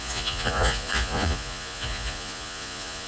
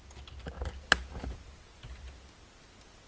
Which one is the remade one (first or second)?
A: first